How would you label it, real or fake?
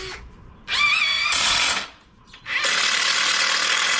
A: real